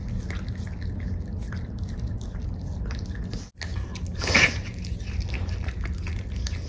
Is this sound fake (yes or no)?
no